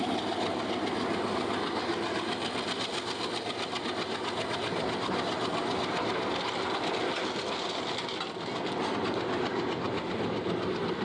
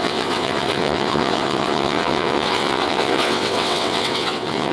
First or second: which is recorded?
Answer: first